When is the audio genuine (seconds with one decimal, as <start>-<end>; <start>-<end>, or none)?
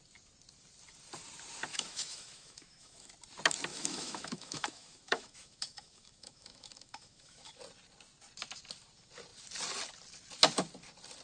0.0-1.7; 3.1-3.7; 7.6-11.2